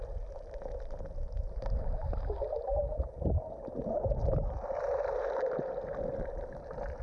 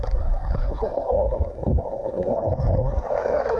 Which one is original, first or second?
first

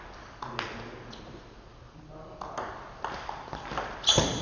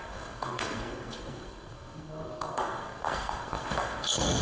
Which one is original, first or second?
first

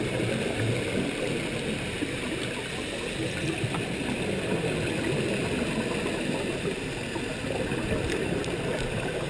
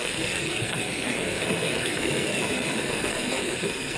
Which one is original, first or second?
first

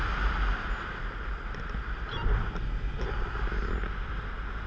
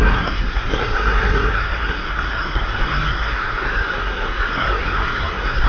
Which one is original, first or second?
first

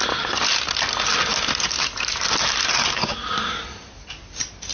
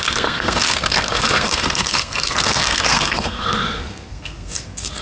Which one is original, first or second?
first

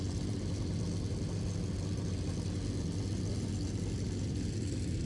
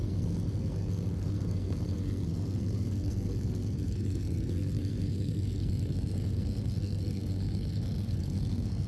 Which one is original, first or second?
first